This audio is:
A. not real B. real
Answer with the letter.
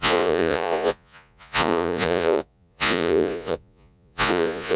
A